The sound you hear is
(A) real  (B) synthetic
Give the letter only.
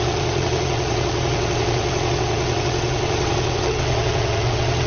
B